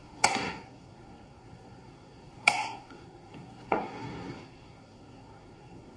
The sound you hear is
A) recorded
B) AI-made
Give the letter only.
B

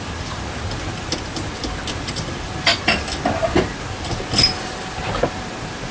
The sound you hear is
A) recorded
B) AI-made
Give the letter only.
A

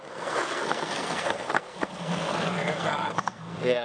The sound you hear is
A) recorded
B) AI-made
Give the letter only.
B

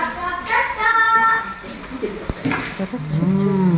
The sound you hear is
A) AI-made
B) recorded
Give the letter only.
B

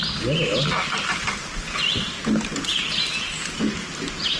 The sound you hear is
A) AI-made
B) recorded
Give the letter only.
B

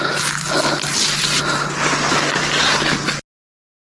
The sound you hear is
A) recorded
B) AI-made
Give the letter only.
A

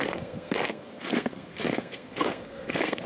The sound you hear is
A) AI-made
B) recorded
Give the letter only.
A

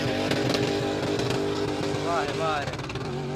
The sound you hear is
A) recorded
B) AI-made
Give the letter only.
A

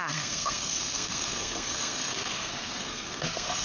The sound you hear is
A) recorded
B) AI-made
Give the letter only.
B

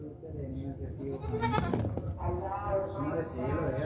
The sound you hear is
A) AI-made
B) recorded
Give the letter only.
B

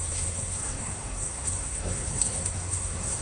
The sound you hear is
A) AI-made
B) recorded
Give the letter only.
A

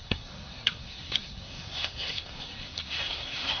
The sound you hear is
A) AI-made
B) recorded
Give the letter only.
A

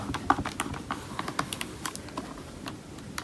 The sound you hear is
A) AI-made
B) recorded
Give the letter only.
B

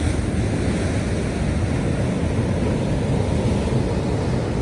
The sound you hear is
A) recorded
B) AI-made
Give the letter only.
A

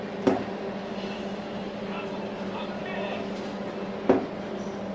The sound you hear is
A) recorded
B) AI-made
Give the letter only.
A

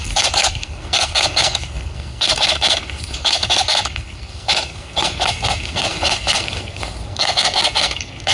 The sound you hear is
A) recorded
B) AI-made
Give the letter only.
B